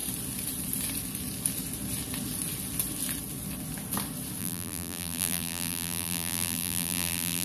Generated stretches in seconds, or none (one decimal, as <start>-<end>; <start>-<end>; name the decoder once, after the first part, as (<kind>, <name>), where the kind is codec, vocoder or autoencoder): 4.4-7.4 (vocoder, BigVGAN v2)